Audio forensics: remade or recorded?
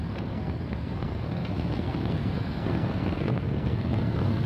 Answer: remade